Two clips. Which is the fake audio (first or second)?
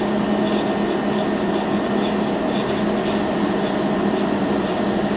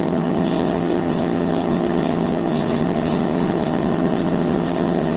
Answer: second